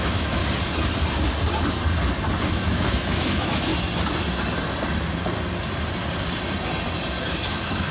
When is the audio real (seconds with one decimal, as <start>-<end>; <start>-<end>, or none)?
0.4-2.4; 3.7-7.2